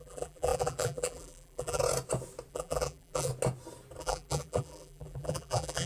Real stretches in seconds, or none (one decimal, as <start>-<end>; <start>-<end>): 1.8-2.5; 3.3-4.0

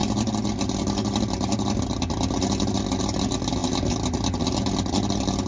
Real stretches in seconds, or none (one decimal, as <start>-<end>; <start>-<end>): 0.0-5.5

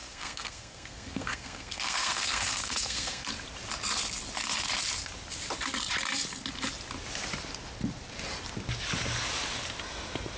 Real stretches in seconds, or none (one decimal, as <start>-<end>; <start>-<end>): 3.3-10.4

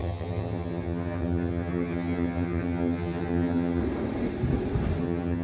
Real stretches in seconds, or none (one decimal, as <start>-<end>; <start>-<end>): 3.8-5.0

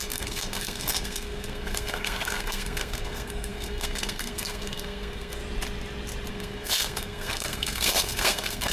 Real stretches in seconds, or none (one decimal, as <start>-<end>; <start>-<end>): 5.4-6.3

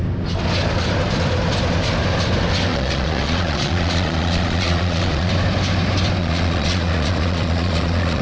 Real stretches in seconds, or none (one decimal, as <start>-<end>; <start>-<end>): 0.0-2.7; 5.3-6.2

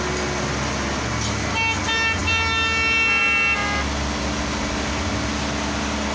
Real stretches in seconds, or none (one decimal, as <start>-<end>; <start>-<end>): 0.0-6.1

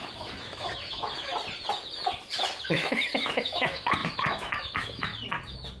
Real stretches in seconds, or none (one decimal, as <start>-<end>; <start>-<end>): 1.3-2.7; 5.1-5.8